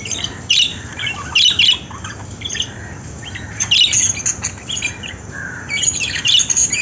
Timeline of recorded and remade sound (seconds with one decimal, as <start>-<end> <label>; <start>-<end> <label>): 0.0-0.9 remade; 0.9-5.0 recorded; 5.0-6.8 remade